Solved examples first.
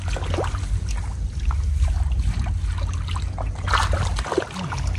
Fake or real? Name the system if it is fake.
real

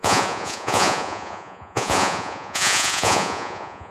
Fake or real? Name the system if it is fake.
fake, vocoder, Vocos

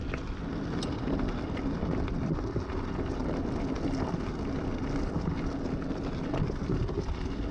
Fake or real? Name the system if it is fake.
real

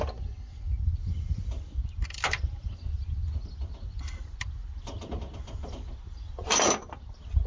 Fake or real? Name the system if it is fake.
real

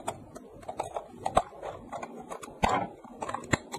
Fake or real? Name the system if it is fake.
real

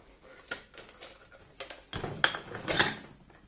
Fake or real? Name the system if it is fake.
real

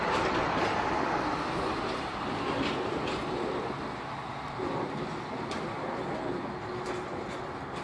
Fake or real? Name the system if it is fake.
real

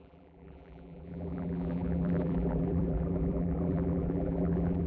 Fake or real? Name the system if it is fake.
fake, vocoder, BigVGAN v2